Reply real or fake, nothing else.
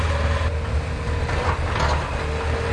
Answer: real